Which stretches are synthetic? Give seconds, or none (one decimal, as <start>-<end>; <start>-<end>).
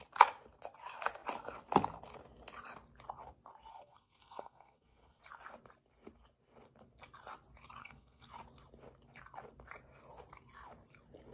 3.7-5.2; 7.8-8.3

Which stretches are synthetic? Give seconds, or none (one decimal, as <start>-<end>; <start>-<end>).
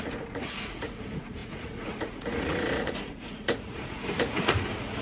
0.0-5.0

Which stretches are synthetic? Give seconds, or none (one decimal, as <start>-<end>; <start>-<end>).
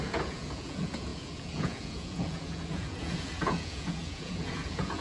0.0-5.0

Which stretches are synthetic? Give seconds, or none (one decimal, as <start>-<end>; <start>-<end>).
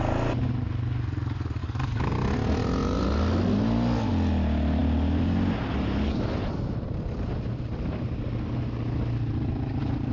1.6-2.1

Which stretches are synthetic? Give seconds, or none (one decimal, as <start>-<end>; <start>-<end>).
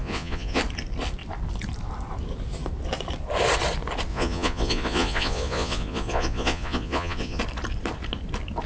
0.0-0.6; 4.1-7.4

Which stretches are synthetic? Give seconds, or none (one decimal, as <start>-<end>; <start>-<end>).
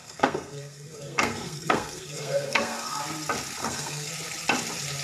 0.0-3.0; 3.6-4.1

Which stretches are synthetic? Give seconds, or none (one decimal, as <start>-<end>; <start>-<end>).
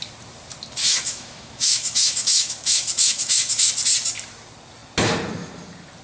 0.8-3.7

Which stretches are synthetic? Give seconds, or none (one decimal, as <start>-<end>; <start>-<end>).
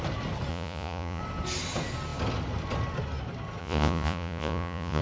0.5-1.2; 3.6-5.0